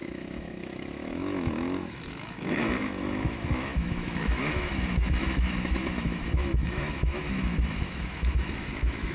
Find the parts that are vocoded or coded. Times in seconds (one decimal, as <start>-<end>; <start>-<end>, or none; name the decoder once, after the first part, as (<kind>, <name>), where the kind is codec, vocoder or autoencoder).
0.0-9.1 (autoencoder, DAC-VAE)